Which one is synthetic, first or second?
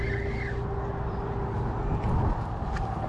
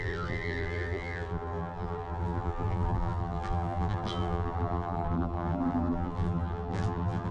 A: second